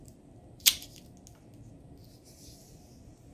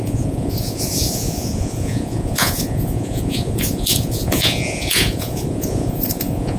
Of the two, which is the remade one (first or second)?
second